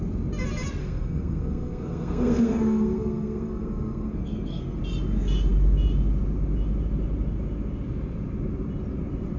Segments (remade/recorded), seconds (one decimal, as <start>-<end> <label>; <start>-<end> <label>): 0.0-0.8 recorded; 0.8-4.8 remade; 4.8-9.4 recorded